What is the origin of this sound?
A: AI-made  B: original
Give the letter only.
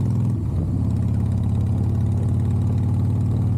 B